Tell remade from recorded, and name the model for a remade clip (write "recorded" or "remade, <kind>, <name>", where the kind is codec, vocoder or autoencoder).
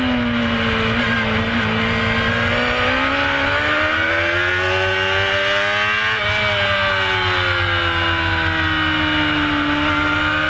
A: recorded